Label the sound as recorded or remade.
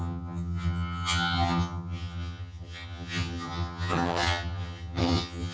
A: remade